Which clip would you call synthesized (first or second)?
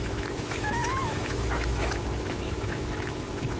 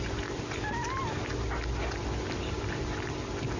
first